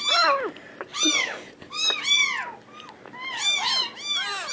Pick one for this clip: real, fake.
real